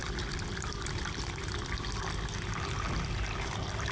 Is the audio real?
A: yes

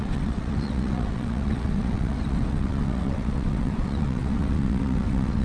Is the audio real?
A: no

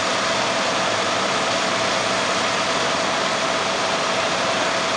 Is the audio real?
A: yes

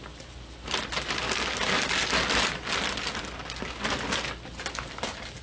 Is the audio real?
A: yes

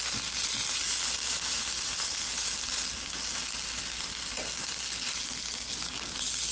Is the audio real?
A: yes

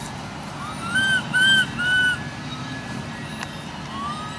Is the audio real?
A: yes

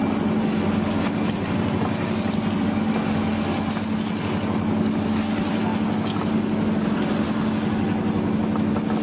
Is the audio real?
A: yes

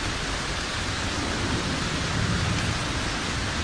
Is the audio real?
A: yes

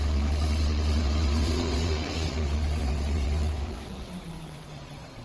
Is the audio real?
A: no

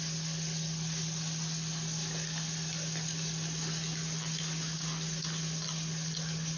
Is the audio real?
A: yes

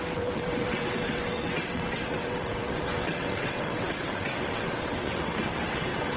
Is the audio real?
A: no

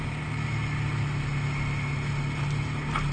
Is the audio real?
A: yes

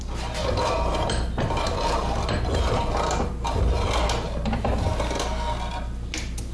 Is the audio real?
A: yes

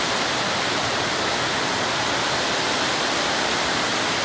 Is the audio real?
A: yes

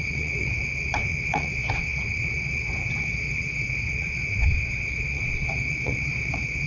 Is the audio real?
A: no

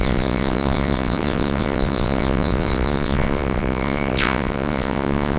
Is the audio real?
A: no